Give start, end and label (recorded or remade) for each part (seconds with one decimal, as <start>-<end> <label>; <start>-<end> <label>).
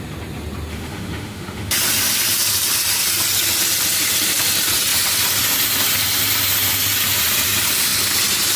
0.0-0.7 recorded; 0.7-1.7 remade; 1.7-8.6 recorded